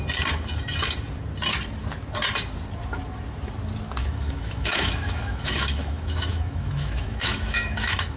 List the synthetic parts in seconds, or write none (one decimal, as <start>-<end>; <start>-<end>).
4.0-8.2